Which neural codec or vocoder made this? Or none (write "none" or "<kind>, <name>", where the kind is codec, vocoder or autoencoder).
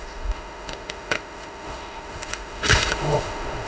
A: autoencoder, DAC-VAE